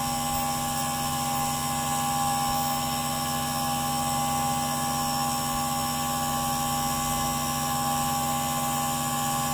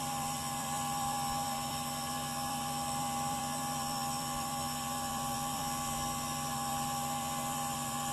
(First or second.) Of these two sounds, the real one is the first